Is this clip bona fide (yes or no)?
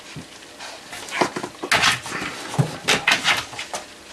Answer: yes